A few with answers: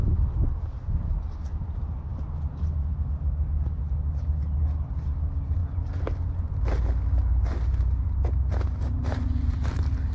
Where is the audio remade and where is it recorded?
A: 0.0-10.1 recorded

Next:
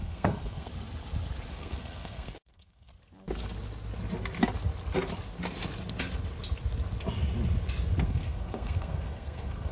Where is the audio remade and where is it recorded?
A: 0.0-0.7 remade; 0.7-1.5 recorded; 1.5-2.9 remade; 2.9-8.0 recorded; 8.0-9.7 remade